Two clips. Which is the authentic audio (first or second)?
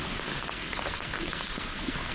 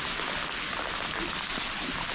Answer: second